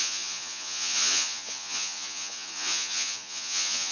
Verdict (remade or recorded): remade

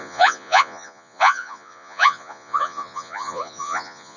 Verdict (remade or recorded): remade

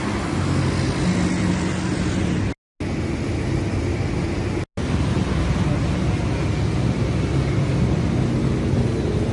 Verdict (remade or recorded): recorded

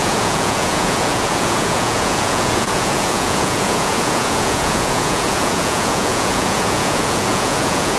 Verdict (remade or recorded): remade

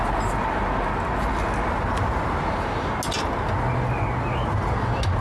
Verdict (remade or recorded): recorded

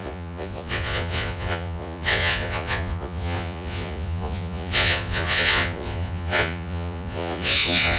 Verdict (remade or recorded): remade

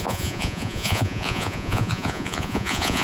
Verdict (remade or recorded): remade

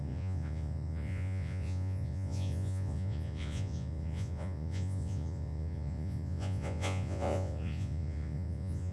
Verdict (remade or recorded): remade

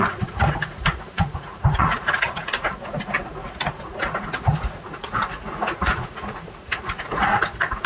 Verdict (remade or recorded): remade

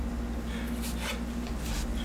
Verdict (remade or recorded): recorded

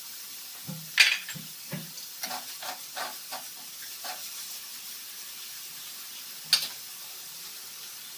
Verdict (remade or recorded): recorded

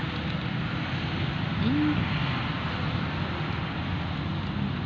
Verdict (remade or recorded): recorded